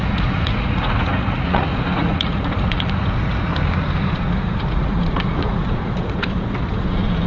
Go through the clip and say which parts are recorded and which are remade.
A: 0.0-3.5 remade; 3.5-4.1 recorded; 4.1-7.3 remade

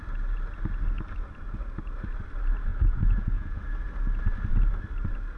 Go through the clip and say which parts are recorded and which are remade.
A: 0.0-2.7 recorded; 2.7-3.6 remade; 3.6-5.4 recorded